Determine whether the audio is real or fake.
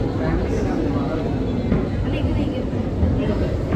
real